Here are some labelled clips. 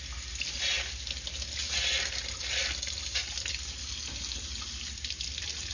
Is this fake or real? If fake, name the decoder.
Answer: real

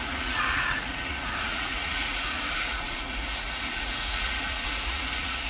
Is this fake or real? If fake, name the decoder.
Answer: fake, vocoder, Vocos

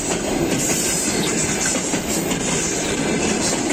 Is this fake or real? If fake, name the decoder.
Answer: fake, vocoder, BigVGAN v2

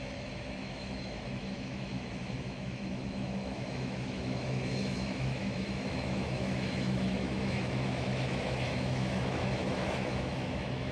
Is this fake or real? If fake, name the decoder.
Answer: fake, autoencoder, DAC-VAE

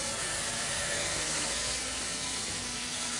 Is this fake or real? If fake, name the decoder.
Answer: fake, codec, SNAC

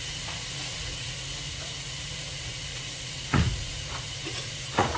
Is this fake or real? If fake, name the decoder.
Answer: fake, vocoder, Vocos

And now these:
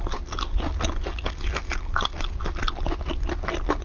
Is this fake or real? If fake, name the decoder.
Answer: real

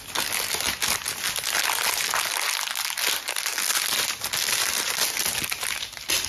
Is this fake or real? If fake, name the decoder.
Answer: real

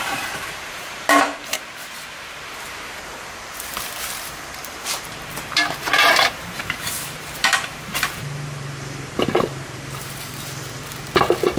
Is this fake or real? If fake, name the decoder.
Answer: fake, vocoder, BigVGAN v2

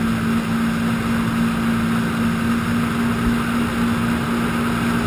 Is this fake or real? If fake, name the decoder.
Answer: real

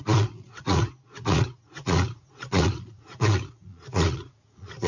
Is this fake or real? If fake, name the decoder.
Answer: fake, vocoder, Vocos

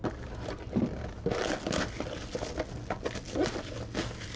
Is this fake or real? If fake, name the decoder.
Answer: real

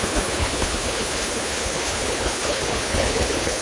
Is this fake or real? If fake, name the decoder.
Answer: fake, codec, HILCodec